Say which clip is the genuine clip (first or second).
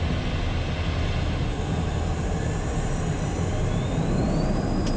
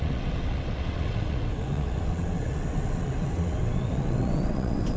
first